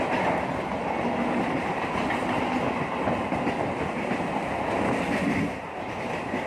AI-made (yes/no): no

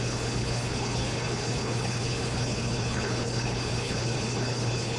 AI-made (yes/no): yes